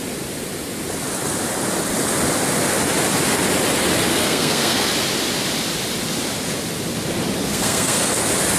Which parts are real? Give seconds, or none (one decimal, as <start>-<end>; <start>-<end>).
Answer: 0.0-4.1; 4.9-7.5; 8.1-8.6